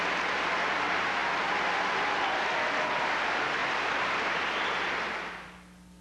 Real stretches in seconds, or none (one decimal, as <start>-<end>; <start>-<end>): 0.0-6.0

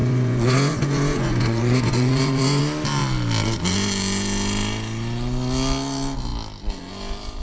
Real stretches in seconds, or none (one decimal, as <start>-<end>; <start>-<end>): 2.6-7.4

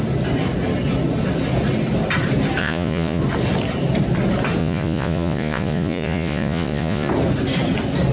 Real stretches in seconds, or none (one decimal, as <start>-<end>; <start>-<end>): 0.0-2.6; 3.2-4.6; 7.1-8.1

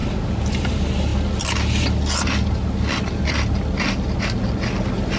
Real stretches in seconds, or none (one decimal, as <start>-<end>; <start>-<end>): 0.0-5.2

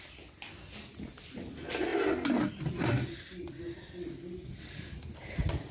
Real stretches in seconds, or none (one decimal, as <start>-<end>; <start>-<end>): 0.0-5.7

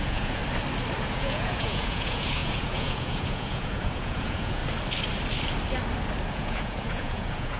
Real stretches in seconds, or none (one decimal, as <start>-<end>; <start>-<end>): 0.4-1.0; 4.6-6.3

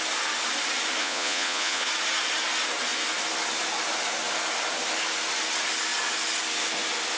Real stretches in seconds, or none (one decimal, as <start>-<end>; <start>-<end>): 0.0-1.0; 1.9-7.2

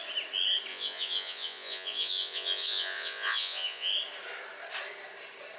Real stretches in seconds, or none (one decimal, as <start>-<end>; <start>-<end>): 0.0-0.7; 3.9-5.6